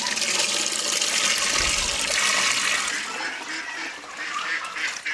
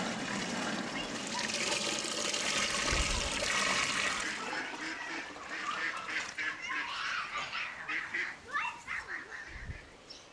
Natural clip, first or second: first